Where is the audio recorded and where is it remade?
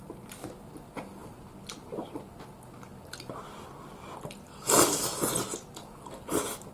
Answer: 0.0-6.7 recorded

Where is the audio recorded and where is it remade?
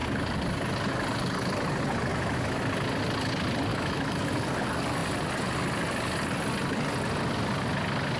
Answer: 0.0-2.1 recorded; 2.1-2.6 remade; 2.6-3.7 recorded; 3.7-4.2 remade; 4.2-8.2 recorded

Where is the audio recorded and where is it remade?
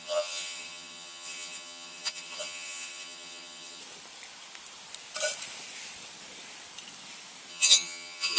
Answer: 0.0-3.8 remade; 3.8-7.5 recorded; 7.5-8.4 remade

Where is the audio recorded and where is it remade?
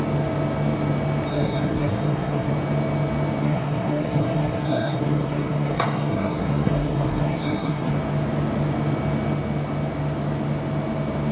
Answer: 0.0-1.3 recorded; 1.3-2.5 remade; 2.5-3.4 recorded; 3.4-7.9 remade; 7.9-11.3 recorded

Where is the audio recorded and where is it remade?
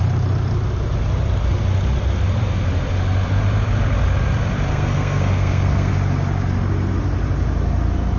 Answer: 0.0-4.7 recorded; 4.7-5.9 remade; 5.9-8.2 recorded